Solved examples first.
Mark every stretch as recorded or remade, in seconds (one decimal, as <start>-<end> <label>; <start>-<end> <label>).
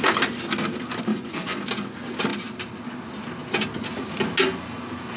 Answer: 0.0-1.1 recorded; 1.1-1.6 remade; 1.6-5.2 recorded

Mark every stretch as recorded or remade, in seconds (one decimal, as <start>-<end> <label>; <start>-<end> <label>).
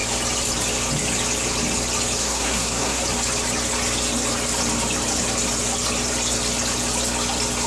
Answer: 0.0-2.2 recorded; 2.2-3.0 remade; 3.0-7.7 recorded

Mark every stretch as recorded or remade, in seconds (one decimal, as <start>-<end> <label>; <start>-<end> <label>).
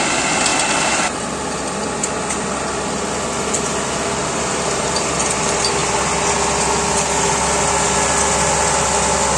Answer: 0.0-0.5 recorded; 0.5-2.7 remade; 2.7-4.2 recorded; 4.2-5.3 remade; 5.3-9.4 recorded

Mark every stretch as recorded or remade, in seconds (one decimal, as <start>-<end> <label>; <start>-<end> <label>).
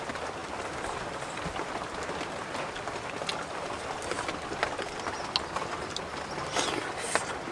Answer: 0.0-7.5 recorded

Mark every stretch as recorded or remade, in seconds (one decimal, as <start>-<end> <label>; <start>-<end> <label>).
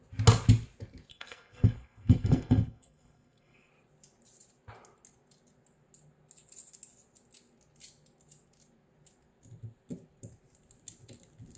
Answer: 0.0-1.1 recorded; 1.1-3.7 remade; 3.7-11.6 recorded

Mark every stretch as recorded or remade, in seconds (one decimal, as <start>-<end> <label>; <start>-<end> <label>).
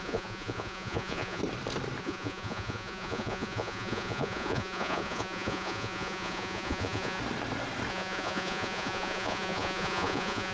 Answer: 0.0-1.4 remade; 1.4-2.0 recorded; 2.0-7.2 remade; 7.2-7.9 recorded; 7.9-10.5 remade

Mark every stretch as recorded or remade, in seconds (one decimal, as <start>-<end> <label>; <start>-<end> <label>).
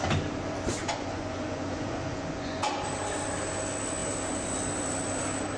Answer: 0.0-0.8 recorded; 0.8-2.7 remade; 2.7-5.6 recorded